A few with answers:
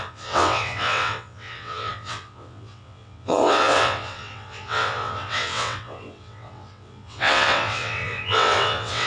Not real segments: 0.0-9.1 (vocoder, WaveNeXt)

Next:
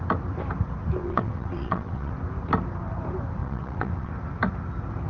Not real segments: 1.0-2.1 (vocoder, WaveNeXt); 3.4-4.1

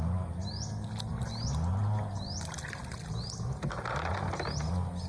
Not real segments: none

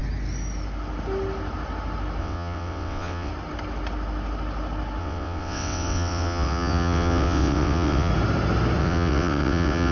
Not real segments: 2.2-3.3 (vocoder, WaveNeXt); 5.0-8.1; 8.8-9.9

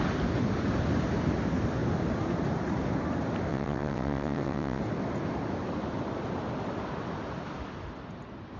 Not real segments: 3.5-4.8 (vocoder, WaveNeXt)